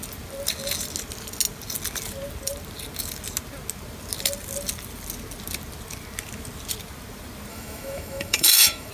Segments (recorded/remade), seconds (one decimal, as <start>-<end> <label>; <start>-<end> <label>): 0.0-7.5 recorded; 7.5-8.9 remade